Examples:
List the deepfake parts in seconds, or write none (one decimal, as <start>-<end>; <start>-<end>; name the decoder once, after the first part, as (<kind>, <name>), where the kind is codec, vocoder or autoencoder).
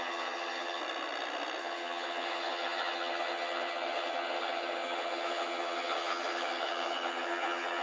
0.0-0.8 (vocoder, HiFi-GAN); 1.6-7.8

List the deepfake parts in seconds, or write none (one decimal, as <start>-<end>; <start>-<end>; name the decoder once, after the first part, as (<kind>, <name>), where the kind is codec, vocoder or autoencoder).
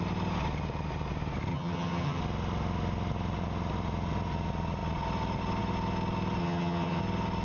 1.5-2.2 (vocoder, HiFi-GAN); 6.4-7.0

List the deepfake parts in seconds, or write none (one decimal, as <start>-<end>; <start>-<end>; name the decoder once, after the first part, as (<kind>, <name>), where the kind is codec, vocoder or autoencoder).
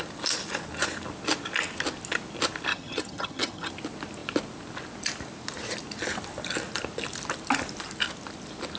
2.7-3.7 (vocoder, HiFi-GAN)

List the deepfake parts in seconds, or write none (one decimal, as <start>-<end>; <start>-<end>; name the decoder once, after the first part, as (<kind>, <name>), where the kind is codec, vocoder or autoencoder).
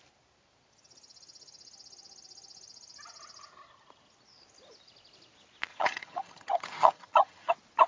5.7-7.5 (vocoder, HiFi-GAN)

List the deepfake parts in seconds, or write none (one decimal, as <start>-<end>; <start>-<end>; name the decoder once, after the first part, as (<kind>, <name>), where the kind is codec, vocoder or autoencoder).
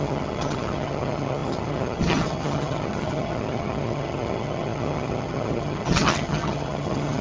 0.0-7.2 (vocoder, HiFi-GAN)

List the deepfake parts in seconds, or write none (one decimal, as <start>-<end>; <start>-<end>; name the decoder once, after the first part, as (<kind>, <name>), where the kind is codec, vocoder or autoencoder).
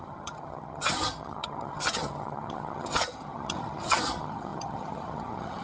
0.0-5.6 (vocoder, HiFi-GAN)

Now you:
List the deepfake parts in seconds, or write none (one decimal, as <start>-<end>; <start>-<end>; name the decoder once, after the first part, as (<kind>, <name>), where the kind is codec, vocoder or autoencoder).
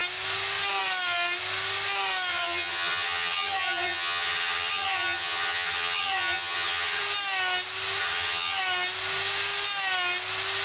2.3-7.0 (vocoder, HiFi-GAN); 8.0-8.6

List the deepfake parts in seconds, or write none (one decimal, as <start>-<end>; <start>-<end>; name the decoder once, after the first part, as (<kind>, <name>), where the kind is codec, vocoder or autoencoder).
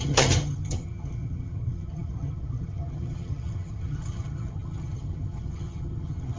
0.0-6.4 (vocoder, HiFi-GAN)